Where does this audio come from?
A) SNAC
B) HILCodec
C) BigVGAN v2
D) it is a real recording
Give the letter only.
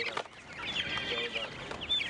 D